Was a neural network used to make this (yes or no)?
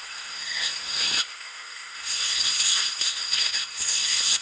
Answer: yes